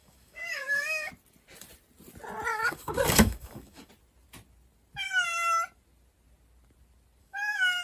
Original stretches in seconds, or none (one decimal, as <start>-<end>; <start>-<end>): 1.1-2.5; 3.9-7.2